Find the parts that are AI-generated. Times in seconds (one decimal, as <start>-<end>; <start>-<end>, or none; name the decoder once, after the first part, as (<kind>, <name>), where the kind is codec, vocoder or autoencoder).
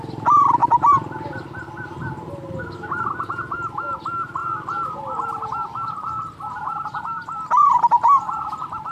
0.6-3.1 (vocoder, BigVGAN v2); 4.4-8.9